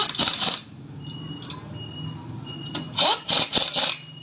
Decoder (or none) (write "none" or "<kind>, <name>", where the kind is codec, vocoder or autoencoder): none